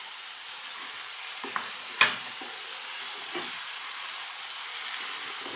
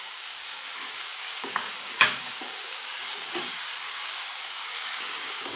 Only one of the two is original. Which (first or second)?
first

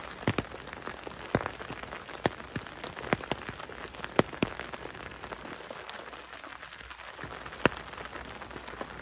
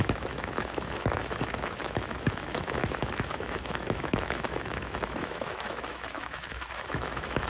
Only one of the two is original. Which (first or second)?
first